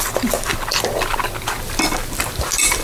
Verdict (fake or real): fake